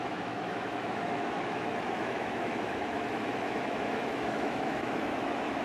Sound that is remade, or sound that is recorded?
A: remade